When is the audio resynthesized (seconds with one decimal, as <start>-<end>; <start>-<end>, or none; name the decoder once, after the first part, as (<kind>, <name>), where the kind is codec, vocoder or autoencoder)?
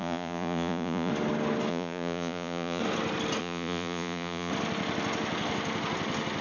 0.0-1.1 (vocoder, Vocos); 1.7-2.8; 3.4-4.5